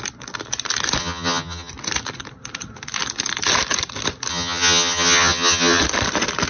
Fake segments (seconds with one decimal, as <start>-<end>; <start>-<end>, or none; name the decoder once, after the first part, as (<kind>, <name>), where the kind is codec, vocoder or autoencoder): 1.0-1.7 (vocoder, HiFi-GAN); 4.3-5.8